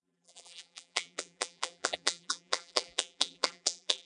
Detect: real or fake fake